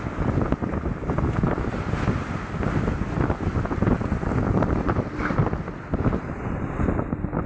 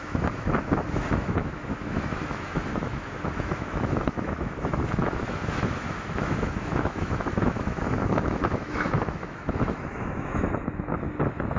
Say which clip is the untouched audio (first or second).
first